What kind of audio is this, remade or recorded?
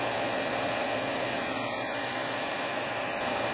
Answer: recorded